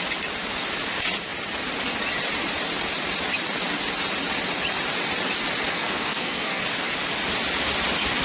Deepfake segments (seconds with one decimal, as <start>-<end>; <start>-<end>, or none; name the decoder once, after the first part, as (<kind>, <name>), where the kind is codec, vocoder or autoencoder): 5.7-6.6 (codec, SNAC)